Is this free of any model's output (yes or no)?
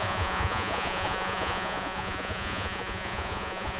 no